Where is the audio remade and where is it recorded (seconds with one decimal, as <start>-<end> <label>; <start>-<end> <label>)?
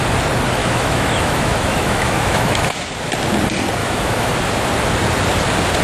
0.0-0.6 recorded; 0.6-2.8 remade; 2.8-3.8 recorded; 3.8-4.3 remade; 4.3-5.8 recorded